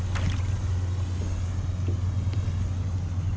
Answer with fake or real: real